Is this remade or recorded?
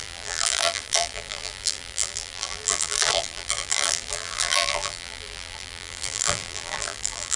remade